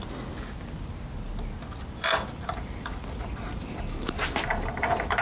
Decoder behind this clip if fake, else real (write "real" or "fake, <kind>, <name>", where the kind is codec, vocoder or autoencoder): real